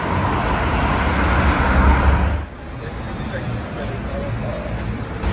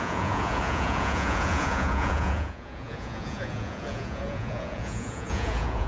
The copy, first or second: second